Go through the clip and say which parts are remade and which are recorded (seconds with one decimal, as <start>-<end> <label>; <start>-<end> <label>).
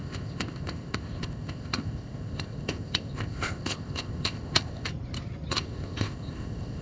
0.0-4.9 remade; 4.9-5.5 recorded; 5.5-6.8 remade